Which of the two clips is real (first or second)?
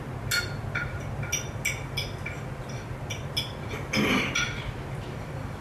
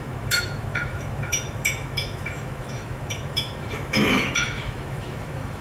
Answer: first